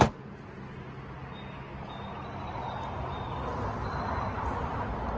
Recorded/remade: recorded